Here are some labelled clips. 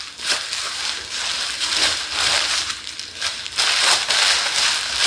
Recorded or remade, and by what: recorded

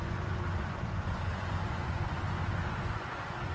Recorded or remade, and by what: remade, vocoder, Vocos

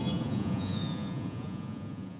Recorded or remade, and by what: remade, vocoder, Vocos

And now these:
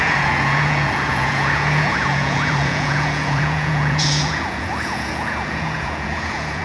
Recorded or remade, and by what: remade, vocoder, Vocos